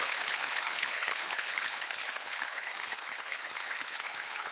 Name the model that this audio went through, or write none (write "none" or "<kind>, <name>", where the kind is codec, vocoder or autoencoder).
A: codec, HILCodec